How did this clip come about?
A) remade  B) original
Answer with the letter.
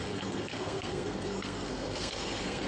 A